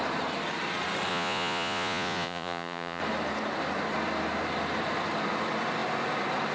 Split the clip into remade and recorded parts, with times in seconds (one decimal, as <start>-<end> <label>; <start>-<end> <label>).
0.0-1.1 recorded; 1.1-3.0 remade; 3.0-6.5 recorded